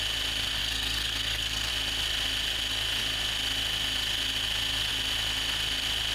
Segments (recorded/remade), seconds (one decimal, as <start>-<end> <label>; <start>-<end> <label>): 0.0-0.6 recorded; 0.6-1.7 remade; 1.7-6.1 recorded